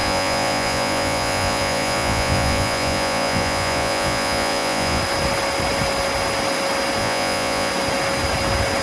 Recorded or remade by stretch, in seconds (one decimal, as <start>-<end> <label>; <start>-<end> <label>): 0.0-5.0 remade; 5.0-7.0 recorded; 7.0-7.7 remade; 7.7-8.8 recorded